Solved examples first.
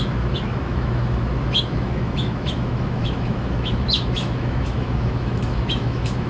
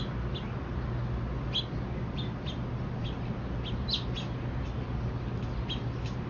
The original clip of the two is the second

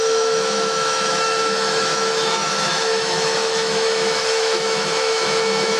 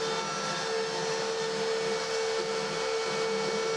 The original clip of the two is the second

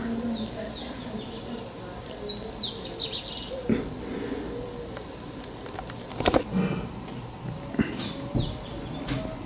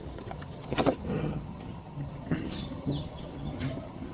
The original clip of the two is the first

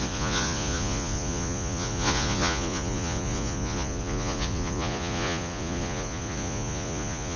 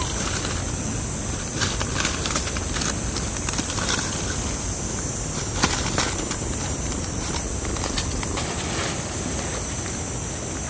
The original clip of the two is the second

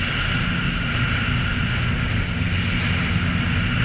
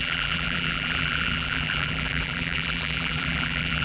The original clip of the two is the first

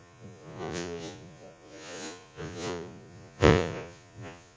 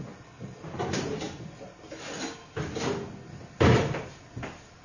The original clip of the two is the second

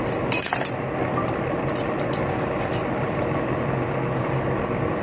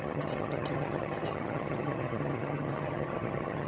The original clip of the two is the first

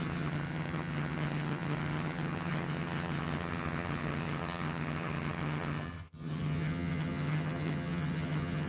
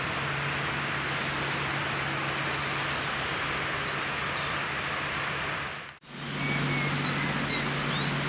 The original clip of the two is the second